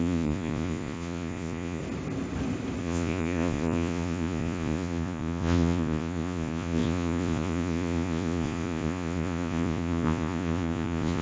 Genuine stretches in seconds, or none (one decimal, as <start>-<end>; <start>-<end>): 1.8-2.8